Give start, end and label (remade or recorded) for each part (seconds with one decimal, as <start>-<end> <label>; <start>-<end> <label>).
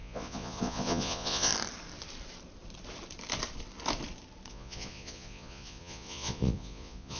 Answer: 0.0-1.5 remade; 1.5-4.5 recorded; 4.5-7.2 remade